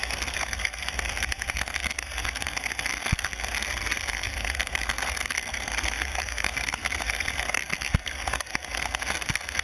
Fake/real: fake